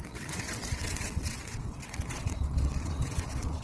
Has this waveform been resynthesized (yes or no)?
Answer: yes